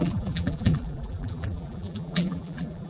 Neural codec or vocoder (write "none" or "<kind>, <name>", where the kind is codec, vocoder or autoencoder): vocoder, BigVGAN v2